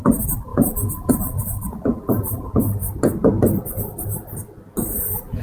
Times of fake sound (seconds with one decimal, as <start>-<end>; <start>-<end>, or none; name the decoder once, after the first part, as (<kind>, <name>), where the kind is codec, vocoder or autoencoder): 0.0-2.8 (vocoder, BigVGAN v2); 5.0-5.4

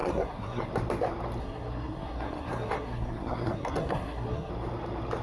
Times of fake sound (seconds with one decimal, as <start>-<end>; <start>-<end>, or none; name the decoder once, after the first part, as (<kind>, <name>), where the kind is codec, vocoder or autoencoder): 0.0-0.7 (codec, SNAC); 1.4-4.5

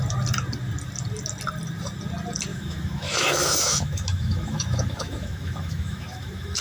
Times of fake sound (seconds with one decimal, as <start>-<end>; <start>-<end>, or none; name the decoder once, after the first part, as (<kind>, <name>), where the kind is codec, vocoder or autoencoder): 2.5-6.6 (autoencoder, DAC-VAE)

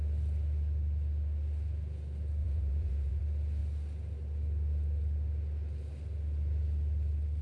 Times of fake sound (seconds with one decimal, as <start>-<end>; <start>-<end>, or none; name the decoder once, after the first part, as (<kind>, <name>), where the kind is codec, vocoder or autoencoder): 2.4-3.2 (vocoder, Vocos)

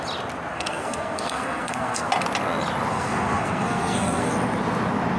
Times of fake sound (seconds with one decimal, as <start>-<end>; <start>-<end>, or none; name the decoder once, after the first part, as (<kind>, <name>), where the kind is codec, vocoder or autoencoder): 0.5-2.1 (codec, SNAC); 2.9-4.3

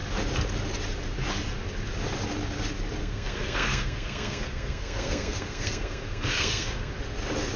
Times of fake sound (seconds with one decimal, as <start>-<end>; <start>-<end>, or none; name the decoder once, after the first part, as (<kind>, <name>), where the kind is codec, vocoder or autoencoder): 3.0-6.9 (codec, SNAC)

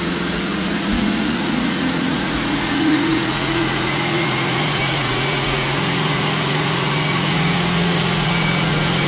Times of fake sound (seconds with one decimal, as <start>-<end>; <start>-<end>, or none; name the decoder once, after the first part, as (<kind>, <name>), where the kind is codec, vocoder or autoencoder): 0.0-9.1 (vocoder, Vocos)

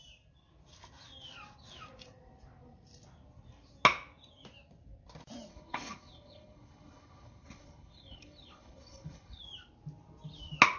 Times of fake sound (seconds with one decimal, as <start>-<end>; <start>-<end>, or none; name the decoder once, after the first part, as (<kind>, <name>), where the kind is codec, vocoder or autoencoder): 5.5-9.4 (codec, HILCodec)